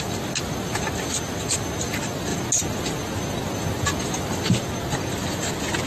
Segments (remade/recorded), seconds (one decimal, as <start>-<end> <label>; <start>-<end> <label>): 0.0-5.9 recorded

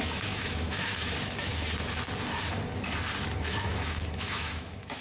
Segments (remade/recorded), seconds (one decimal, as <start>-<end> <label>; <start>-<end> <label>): 0.0-1.5 remade; 1.5-3.4 recorded; 3.4-5.0 remade

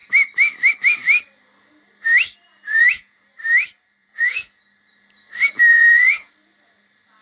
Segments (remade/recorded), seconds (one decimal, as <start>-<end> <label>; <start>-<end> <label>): 0.0-2.7 recorded; 2.7-3.2 remade; 3.2-4.0 recorded; 4.0-4.6 remade; 4.6-5.7 recorded; 5.7-6.3 remade; 6.3-7.2 recorded

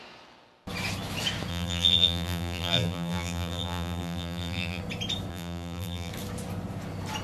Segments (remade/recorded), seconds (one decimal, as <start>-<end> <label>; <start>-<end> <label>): 0.0-1.5 recorded; 1.5-4.8 remade; 4.8-5.3 recorded; 5.3-6.1 remade; 6.1-7.2 recorded

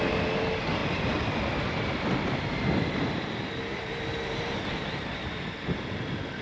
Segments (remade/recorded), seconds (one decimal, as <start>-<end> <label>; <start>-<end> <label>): 0.0-0.8 recorded; 0.8-4.3 remade; 4.3-6.4 recorded

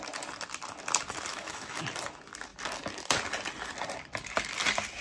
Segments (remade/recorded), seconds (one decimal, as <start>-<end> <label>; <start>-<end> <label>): 0.0-1.3 recorded; 1.3-1.8 remade; 1.8-5.0 recorded